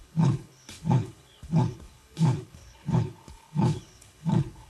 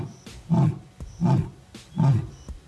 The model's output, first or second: first